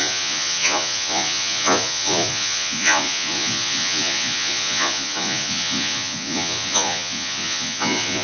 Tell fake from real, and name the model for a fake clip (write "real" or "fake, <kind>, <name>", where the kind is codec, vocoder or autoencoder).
fake, vocoder, Vocos